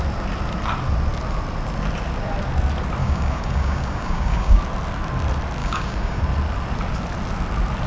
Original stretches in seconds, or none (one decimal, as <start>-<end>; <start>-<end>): 0.0-3.0; 4.6-5.6; 6.2-7.9